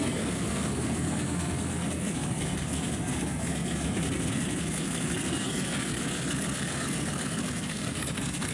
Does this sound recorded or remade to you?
remade